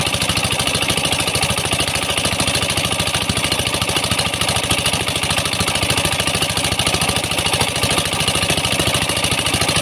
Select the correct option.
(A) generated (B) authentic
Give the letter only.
B